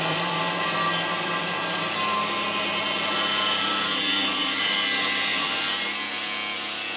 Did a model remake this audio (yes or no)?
no